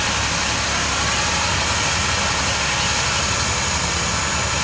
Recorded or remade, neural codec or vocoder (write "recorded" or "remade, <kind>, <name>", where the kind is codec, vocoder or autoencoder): recorded